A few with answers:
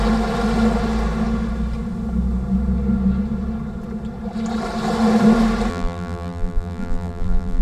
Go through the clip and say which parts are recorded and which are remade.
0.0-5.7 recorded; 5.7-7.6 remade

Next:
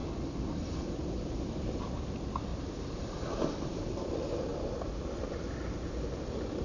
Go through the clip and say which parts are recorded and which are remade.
0.0-2.5 recorded; 2.5-4.1 remade; 4.1-6.6 recorded

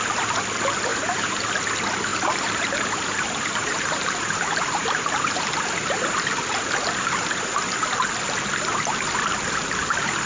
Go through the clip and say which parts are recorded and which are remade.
0.0-0.9 recorded; 0.9-1.4 remade; 1.4-2.1 recorded; 2.1-6.2 remade; 6.2-10.3 recorded

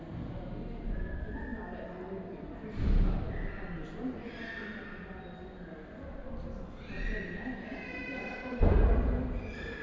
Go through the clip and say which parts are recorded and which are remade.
0.0-4.7 recorded; 4.7-5.2 remade; 5.2-9.8 recorded